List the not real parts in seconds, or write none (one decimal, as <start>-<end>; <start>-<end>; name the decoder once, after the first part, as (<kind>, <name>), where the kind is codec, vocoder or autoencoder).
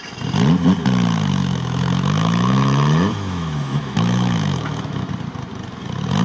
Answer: 1.4-5.1 (autoencoder, DAC-VAE)